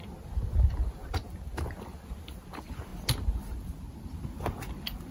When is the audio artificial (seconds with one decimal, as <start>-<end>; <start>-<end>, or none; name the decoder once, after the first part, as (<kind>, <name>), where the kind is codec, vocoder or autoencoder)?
none